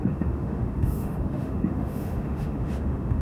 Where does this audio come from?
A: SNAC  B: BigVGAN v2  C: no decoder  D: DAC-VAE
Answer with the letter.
D